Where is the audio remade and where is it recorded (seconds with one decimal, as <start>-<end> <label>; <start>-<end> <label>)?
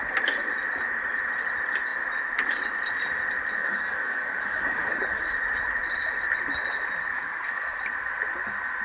0.0-3.6 recorded; 3.6-5.3 remade; 5.3-7.1 recorded; 7.1-7.8 remade; 7.8-8.8 recorded